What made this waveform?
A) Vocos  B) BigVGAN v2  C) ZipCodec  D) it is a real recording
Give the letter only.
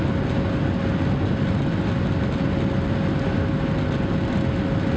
D